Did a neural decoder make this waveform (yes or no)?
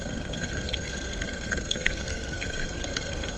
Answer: yes